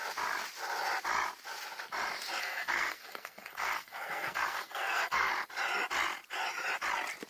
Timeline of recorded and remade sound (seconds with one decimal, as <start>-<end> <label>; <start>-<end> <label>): 0.0-2.4 recorded; 2.4-5.3 remade; 5.3-7.3 recorded